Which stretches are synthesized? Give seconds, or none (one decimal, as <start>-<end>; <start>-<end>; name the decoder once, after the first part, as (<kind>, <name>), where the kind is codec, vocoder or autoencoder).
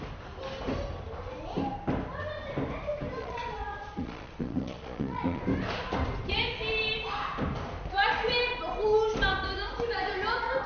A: 3.2-5.4 (vocoder, Vocos)